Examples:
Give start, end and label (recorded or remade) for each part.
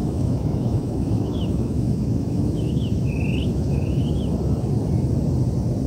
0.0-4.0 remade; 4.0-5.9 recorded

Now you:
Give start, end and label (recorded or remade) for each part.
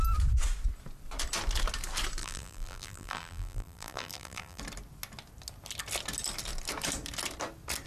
0.0-2.2 recorded; 2.2-4.6 remade; 4.6-7.9 recorded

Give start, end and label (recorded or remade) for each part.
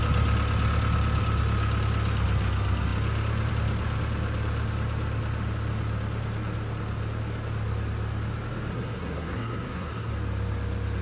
0.0-8.7 recorded; 8.7-10.1 remade; 10.1-11.0 recorded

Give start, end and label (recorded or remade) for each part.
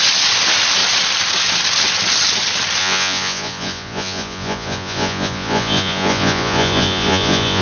0.0-2.8 recorded; 2.8-7.6 remade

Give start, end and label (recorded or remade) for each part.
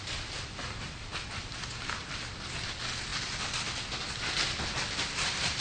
0.0-5.6 recorded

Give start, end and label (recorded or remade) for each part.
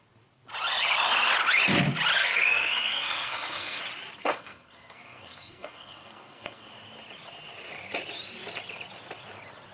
0.0-2.2 recorded; 2.2-3.8 remade; 3.8-4.2 recorded; 4.2-6.7 remade; 6.7-9.7 recorded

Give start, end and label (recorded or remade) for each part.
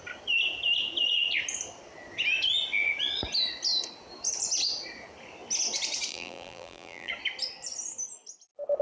0.0-6.1 recorded; 6.1-7.1 remade; 7.1-8.8 recorded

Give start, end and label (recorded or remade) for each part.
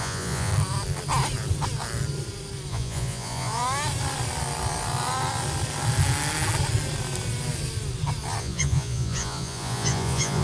0.0-0.5 remade; 0.5-2.7 recorded; 2.7-3.6 remade; 3.6-8.4 recorded; 8.4-10.4 remade